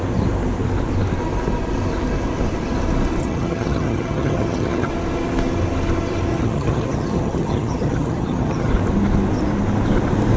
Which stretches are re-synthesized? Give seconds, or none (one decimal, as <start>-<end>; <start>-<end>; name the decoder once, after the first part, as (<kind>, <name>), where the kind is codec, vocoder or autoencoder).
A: 3.2-4.9 (vocoder, HiFi-GAN); 6.3-8.7